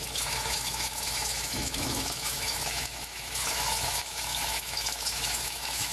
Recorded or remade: remade